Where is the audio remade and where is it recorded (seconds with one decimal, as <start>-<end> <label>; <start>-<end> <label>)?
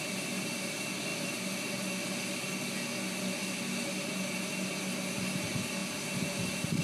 0.0-6.8 recorded